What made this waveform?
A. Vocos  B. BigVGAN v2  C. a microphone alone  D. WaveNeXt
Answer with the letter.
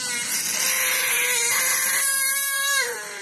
B